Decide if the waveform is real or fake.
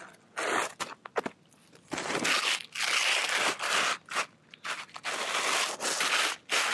real